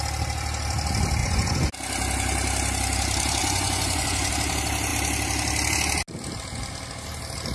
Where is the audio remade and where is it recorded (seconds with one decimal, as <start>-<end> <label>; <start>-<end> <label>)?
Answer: 0.0-1.2 recorded; 1.2-1.7 remade; 1.7-3.4 recorded; 3.4-4.3 remade; 4.3-7.5 recorded